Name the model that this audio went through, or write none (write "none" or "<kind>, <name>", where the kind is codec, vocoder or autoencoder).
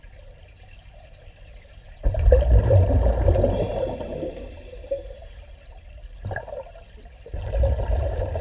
none